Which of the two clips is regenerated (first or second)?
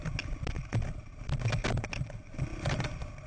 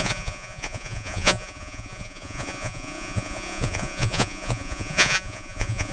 second